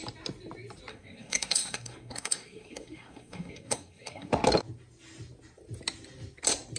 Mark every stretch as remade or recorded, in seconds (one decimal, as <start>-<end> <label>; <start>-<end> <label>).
0.0-0.9 recorded; 0.9-4.3 remade; 4.3-6.8 recorded